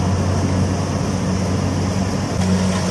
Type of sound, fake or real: real